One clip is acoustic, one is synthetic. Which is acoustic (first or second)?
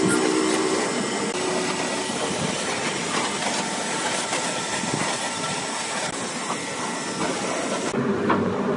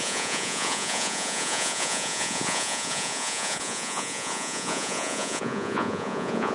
first